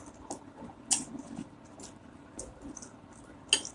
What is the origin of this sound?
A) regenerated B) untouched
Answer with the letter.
B